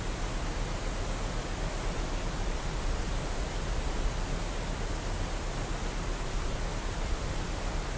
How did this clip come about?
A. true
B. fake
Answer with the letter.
A